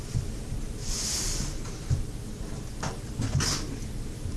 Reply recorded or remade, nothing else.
recorded